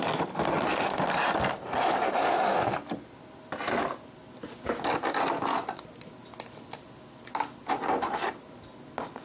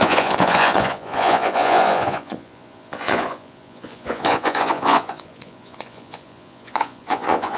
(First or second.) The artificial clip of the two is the second